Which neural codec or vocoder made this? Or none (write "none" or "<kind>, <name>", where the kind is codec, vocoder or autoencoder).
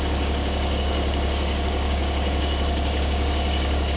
codec, DAC